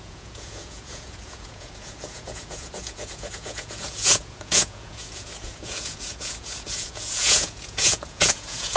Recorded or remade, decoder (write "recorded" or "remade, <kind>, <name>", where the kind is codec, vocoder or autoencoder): remade, vocoder, Vocos